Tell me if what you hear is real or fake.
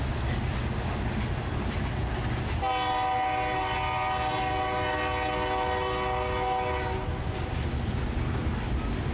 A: real